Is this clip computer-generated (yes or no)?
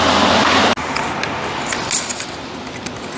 no